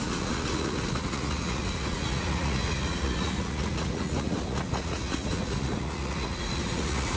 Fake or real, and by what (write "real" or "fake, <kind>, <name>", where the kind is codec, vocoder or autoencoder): fake, vocoder, Vocos